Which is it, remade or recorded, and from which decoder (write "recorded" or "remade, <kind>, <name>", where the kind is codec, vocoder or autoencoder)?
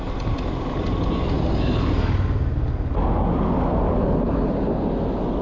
recorded